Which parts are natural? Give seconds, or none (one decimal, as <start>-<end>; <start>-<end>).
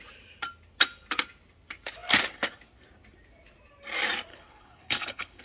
0.0-4.3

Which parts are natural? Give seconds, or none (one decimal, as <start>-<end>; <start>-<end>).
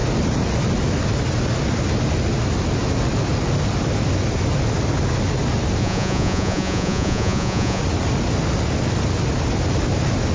0.0-5.8; 7.8-10.3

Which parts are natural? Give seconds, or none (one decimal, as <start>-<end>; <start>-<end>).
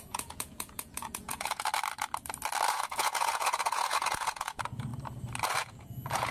1.7-2.7; 4.9-5.6